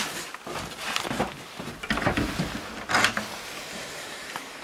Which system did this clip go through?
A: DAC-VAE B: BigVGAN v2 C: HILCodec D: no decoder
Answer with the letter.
B